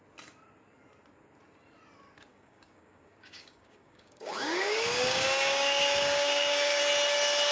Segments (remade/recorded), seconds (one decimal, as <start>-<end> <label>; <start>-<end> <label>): 0.0-2.3 recorded; 2.3-6.8 remade; 6.8-7.5 recorded